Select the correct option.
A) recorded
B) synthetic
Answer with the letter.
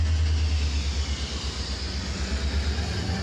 A